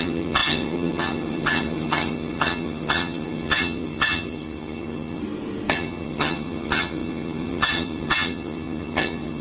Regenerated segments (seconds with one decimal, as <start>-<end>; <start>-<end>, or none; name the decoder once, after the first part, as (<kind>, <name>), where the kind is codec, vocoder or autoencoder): 0.0-5.2 (vocoder, HiFi-GAN); 5.7-9.4